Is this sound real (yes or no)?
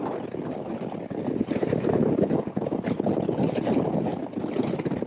yes